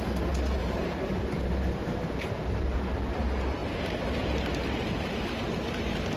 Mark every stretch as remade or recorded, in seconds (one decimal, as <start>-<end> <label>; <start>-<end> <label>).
0.0-0.6 recorded; 0.6-2.5 remade; 2.5-3.6 recorded; 3.6-4.6 remade; 4.6-6.2 recorded